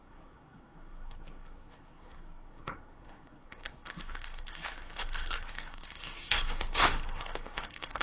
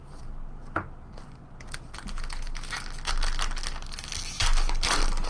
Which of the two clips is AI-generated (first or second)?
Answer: first